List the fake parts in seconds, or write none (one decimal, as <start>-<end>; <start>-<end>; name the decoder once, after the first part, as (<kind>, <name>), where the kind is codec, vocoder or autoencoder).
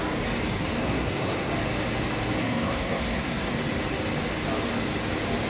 0.8-1.5 (codec, SNAC); 2.4-3.5